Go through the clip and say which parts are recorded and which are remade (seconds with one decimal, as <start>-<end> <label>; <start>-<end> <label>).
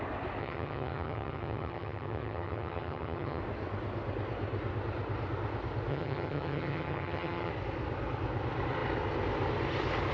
0.0-0.4 recorded; 0.4-3.4 remade; 3.4-5.9 recorded; 5.9-7.5 remade; 7.5-10.1 recorded